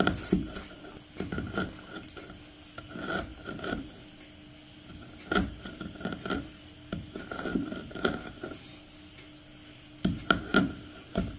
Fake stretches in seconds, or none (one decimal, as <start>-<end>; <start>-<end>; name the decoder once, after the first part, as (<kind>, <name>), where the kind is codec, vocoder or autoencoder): none